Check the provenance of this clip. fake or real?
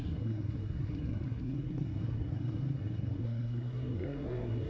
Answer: fake